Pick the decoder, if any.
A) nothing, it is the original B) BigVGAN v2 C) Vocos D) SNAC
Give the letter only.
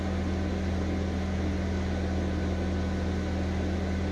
A